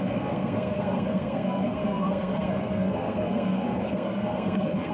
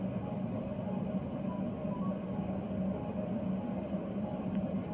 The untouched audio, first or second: second